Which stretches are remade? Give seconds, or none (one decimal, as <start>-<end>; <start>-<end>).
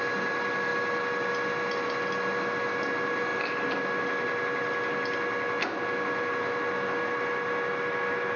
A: none